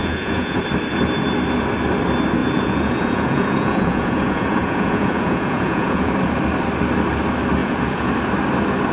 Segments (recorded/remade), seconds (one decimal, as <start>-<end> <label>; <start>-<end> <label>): 0.0-0.6 remade; 0.6-2.4 recorded; 2.4-6.1 remade; 6.1-7.6 recorded; 7.6-8.1 remade; 8.1-8.9 recorded